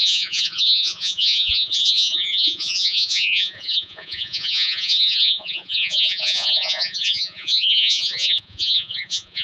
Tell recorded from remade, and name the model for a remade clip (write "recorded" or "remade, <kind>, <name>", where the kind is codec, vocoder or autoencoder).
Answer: remade, vocoder, Vocos